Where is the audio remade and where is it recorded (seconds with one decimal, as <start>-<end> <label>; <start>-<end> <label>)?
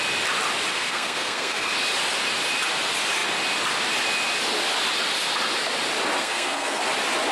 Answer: 0.0-0.7 recorded; 0.7-1.7 remade; 1.7-6.2 recorded; 6.2-6.8 remade; 6.8-7.3 recorded